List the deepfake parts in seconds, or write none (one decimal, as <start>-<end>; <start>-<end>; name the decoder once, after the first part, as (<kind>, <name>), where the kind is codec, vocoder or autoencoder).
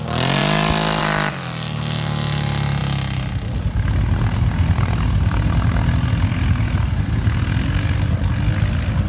none